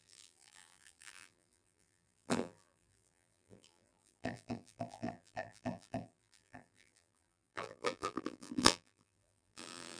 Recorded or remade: remade